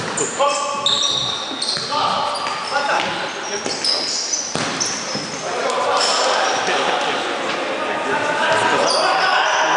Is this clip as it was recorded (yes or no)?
yes